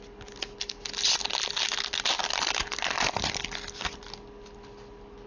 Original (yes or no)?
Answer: yes